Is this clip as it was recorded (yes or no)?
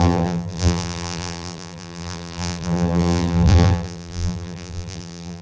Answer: no